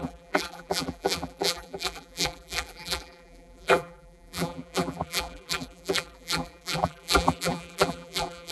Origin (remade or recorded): remade